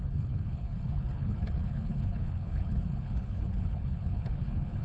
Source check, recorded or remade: remade